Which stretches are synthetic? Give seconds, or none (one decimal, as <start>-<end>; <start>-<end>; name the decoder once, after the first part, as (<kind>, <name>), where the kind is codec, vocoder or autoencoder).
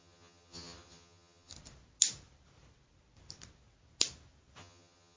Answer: 0.0-1.5 (vocoder, HiFi-GAN); 4.6-5.2